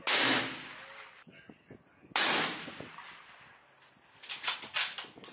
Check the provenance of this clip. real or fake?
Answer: real